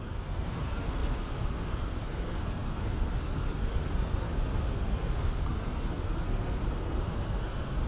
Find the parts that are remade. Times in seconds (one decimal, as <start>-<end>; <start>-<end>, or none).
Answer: 0.0-7.9